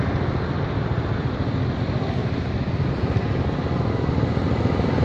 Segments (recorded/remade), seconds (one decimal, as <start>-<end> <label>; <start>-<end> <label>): 0.0-5.0 recorded